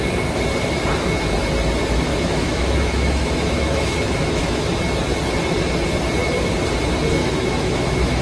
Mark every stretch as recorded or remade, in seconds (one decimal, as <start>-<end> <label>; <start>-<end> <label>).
0.0-2.1 recorded; 2.1-4.8 remade; 4.8-7.2 recorded; 7.2-8.2 remade